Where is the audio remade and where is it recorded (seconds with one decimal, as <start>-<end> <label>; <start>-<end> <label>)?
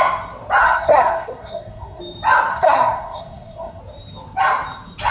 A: 0.0-0.6 recorded; 0.6-2.0 remade; 2.0-2.5 recorded; 2.5-3.8 remade; 3.8-5.1 recorded